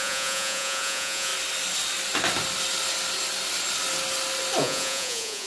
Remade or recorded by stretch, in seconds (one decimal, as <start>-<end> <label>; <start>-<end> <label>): 0.0-1.3 remade; 1.3-4.6 recorded; 4.6-5.5 remade